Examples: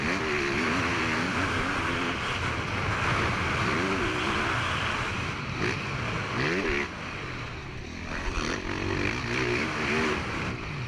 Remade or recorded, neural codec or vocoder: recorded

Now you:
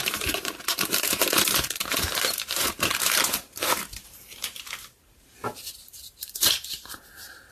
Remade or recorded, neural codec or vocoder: remade, vocoder, BigVGAN v2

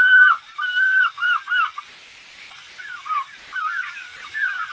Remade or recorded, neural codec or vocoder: remade, vocoder, BigVGAN v2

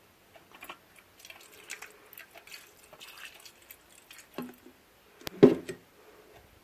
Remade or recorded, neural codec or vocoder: recorded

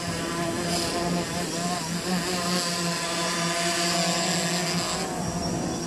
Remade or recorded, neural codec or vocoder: recorded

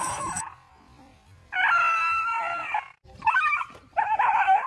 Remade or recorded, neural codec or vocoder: remade, vocoder, BigVGAN v2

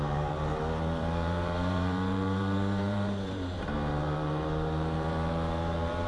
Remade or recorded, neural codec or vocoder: remade, vocoder, BigVGAN v2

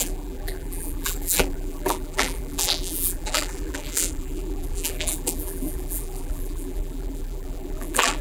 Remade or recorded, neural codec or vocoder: remade, vocoder, BigVGAN v2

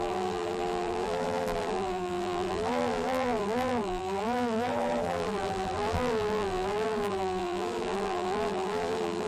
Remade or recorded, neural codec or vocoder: remade, vocoder, BigVGAN v2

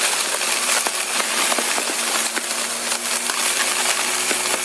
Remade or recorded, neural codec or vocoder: recorded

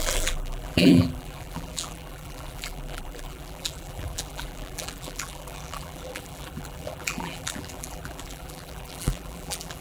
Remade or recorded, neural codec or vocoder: remade, vocoder, BigVGAN v2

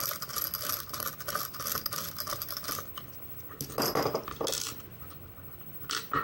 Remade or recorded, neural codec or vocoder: recorded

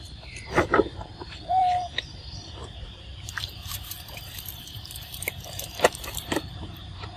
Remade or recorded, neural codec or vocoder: remade, vocoder, BigVGAN v2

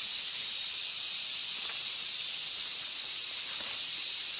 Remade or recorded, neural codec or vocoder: recorded